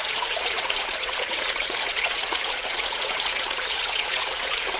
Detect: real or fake fake